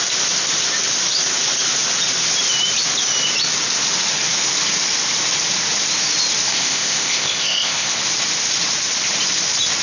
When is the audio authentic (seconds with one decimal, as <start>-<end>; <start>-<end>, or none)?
0.0-6.5; 8.0-9.8